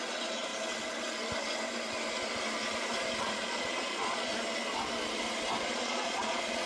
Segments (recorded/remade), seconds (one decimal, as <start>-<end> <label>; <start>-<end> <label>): 0.0-0.5 remade; 0.5-3.2 recorded; 3.2-4.3 remade; 4.3-5.6 recorded; 5.6-6.7 remade